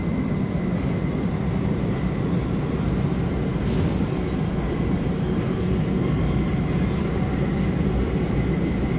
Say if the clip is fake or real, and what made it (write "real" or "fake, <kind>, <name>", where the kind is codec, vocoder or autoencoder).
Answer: real